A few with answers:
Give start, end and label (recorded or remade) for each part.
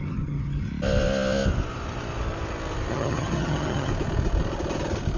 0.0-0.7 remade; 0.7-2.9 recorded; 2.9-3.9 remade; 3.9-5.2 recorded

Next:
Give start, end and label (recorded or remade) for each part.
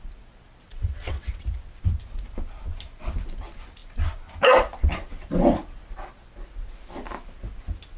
0.0-0.7 recorded; 0.7-1.3 remade; 1.3-8.0 recorded